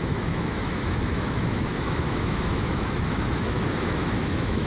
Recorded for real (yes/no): no